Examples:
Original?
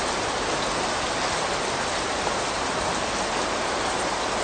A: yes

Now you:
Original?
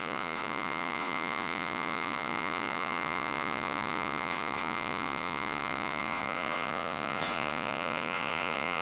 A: no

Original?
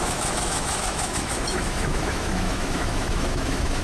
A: no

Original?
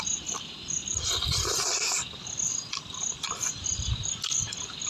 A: no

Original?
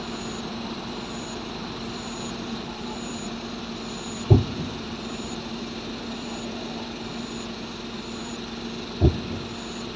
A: no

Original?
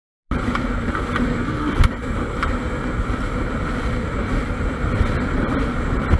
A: no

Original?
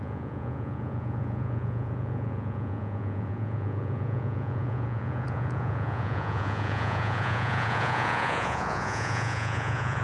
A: no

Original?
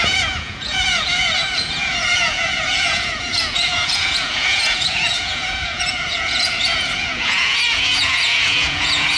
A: no